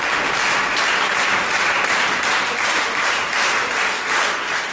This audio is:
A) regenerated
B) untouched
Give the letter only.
B